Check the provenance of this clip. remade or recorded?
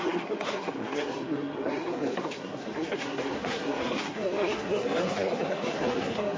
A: remade